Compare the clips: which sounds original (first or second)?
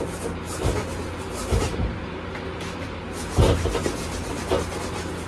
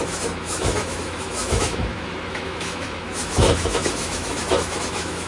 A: first